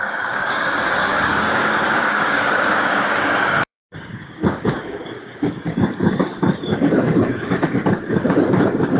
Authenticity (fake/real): fake